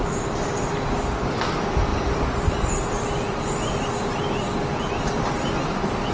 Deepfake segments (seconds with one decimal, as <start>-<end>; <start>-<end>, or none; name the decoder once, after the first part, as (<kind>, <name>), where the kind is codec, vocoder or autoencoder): none